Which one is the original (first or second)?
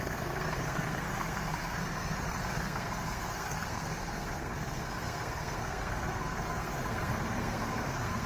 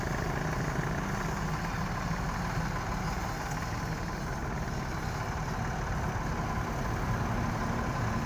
second